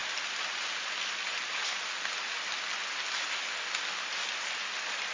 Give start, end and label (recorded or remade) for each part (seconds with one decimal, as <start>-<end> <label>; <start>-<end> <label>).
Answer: 0.0-5.1 recorded